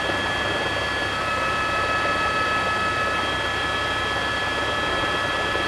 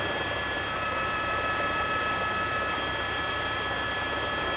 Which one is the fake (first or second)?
second